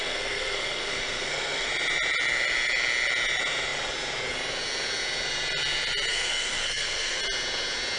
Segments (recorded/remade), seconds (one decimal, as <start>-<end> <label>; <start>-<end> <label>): 0.0-1.7 remade; 1.7-6.1 recorded; 6.1-7.2 remade; 7.2-8.0 recorded